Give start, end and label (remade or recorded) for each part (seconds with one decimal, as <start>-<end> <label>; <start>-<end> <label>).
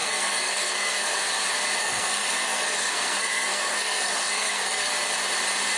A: 0.0-1.2 remade; 1.2-1.8 recorded; 1.8-4.9 remade; 4.9-5.8 recorded